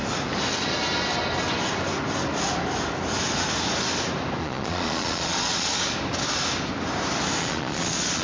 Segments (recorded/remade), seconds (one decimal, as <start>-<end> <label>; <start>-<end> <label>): 0.0-4.4 recorded; 4.4-5.7 remade; 5.7-7.4 recorded; 7.4-8.2 remade